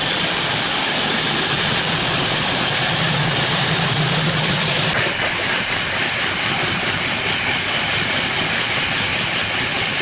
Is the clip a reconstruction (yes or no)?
yes